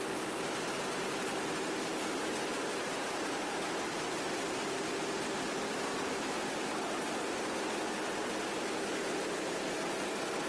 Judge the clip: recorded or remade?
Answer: recorded